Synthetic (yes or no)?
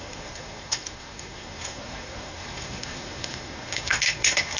yes